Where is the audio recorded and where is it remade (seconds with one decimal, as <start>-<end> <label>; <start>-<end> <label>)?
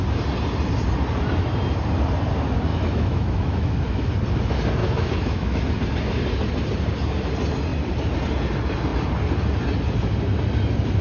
0.0-2.7 recorded; 2.7-4.1 remade; 4.1-4.8 recorded; 4.8-5.6 remade; 5.6-11.0 recorded